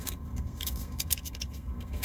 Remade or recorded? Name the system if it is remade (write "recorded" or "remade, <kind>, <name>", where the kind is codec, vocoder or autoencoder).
remade, codec, SNAC